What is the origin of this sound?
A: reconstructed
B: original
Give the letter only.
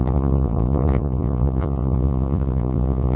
A